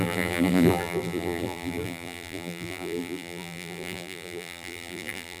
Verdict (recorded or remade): remade